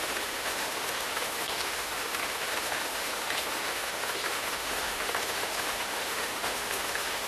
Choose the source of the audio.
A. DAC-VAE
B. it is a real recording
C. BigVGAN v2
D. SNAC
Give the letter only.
A